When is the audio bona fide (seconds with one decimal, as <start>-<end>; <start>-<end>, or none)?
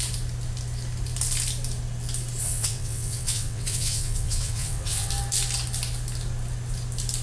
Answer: 0.0-2.4; 5.1-7.2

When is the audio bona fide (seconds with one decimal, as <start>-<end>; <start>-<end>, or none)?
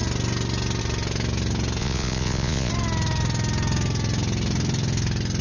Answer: 0.0-1.8; 2.7-5.4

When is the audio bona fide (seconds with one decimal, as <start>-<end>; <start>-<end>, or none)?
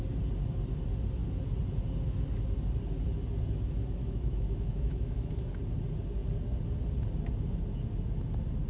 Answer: 0.0-4.0; 5.3-8.7